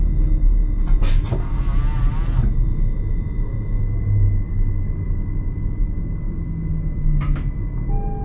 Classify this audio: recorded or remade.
recorded